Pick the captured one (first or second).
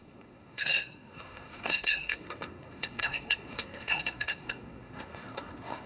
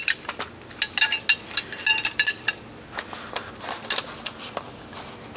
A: second